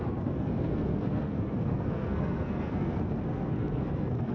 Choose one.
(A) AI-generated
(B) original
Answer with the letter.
A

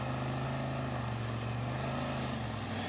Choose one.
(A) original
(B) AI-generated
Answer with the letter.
A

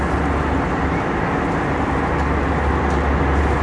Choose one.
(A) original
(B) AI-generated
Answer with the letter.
A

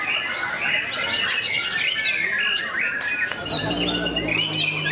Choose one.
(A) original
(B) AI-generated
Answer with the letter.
A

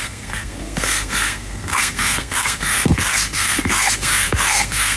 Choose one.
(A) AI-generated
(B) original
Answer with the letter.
A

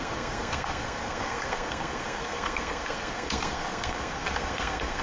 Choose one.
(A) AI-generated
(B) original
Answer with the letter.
A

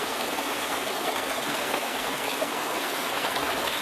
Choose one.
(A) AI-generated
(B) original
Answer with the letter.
A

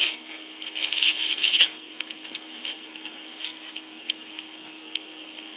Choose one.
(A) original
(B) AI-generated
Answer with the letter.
B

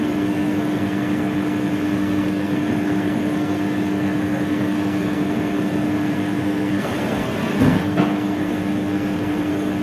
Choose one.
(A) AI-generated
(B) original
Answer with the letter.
A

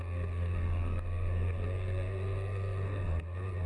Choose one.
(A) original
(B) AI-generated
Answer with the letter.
B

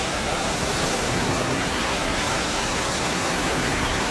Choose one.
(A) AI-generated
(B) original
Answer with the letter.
A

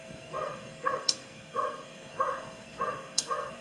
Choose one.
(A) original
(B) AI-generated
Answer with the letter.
B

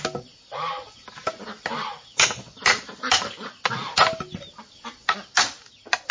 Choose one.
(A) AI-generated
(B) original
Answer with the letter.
B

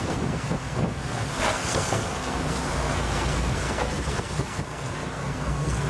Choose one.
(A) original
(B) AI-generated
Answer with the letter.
B